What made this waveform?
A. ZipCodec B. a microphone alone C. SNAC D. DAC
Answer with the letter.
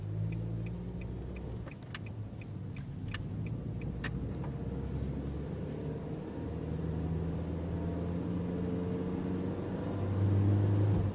B